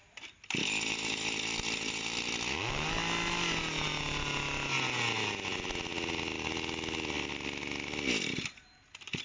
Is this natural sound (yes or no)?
yes